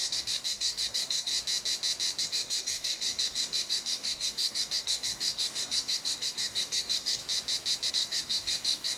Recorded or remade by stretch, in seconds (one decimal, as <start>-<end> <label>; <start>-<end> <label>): 0.0-1.3 remade; 1.3-2.2 recorded; 2.2-7.2 remade; 7.2-7.9 recorded; 7.9-9.0 remade